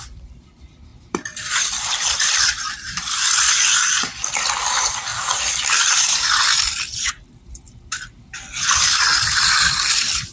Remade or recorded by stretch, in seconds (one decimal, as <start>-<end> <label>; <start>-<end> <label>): 0.0-5.1 remade; 5.1-9.0 recorded; 9.0-10.3 remade